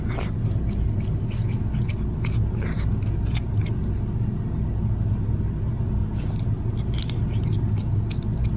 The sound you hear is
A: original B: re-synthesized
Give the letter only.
A